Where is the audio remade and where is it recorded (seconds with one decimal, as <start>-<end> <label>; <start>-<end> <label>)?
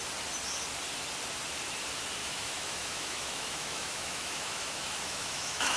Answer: 0.0-2.2 recorded; 2.2-5.8 remade